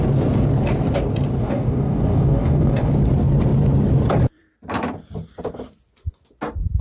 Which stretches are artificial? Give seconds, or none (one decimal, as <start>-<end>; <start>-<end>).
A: 1.4-2.9